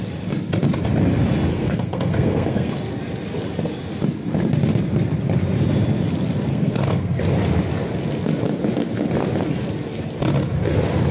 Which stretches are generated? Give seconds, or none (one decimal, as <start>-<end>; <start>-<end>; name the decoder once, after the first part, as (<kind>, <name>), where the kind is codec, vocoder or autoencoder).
1.5-2.7 (codec, SNAC); 6.5-7.2